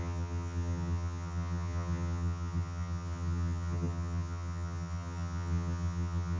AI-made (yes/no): yes